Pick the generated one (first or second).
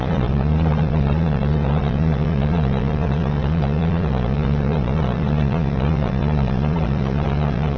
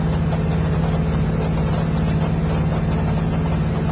first